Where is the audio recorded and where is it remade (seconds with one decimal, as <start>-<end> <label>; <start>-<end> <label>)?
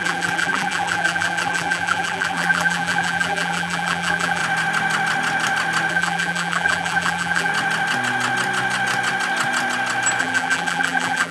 0.0-4.4 remade; 4.4-5.9 recorded; 5.9-7.5 remade; 7.5-10.2 recorded; 10.2-11.3 remade